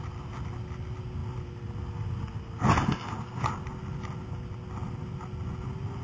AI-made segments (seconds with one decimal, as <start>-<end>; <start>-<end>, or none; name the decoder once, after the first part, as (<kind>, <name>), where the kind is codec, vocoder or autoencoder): none